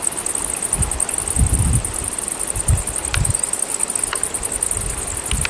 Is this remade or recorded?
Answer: recorded